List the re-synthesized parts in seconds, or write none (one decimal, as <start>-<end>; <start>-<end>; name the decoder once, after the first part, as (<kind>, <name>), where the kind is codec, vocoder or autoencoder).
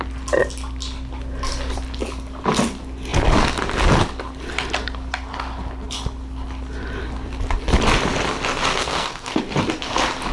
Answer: 8.7-9.4 (codec, SNAC)